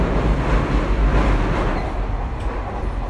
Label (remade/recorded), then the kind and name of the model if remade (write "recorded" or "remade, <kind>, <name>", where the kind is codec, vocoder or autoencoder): recorded